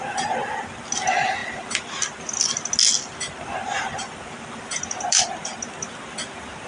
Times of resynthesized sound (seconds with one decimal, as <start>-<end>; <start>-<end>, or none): none